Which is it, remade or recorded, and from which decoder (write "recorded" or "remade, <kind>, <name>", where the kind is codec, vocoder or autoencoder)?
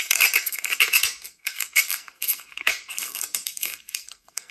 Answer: remade, codec, SNAC